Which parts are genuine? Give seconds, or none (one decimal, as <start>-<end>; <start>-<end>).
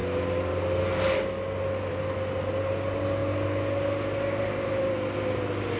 0.0-5.8